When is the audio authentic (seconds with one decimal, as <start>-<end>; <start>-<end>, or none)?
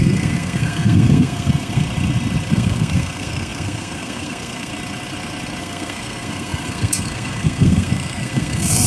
1.8-2.5; 4.7-5.6